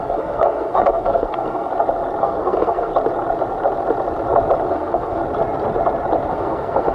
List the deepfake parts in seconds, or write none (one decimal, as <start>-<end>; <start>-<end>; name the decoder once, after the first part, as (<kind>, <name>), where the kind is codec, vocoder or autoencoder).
0.0-1.7 (codec, SNAC); 2.2-2.9; 4.7-5.2; 6.3-6.9